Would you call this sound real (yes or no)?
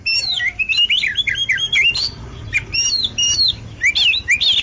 yes